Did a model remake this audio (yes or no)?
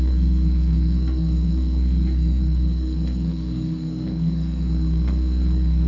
yes